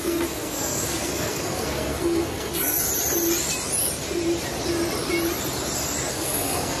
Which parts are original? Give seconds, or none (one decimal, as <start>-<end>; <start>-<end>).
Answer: 2.9-6.1